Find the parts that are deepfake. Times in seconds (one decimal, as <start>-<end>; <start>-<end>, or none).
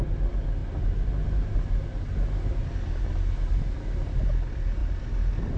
none